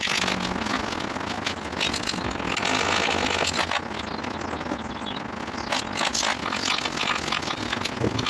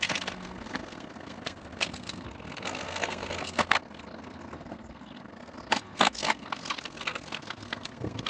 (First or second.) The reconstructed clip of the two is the second